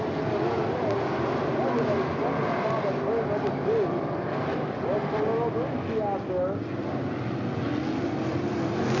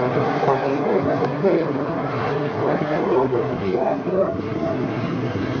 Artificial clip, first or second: second